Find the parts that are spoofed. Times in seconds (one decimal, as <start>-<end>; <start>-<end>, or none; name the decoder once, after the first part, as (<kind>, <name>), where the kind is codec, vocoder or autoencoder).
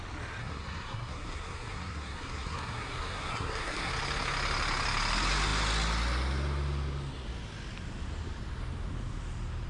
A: 0.4-3.9 (codec, SNAC)